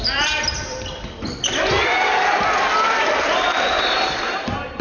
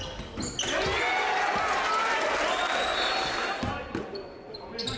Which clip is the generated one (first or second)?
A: first